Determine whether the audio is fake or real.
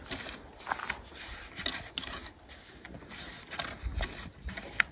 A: real